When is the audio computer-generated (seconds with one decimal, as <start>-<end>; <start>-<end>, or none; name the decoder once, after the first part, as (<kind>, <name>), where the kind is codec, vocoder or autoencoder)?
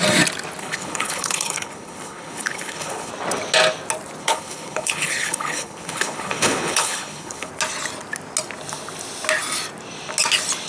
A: 0.6-3.1 (codec, HILCodec); 4.2-7.5